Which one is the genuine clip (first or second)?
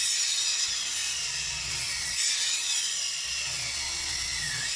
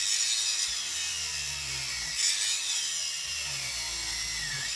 second